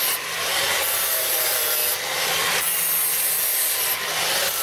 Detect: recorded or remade recorded